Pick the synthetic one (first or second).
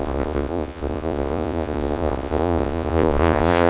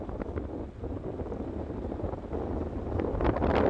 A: first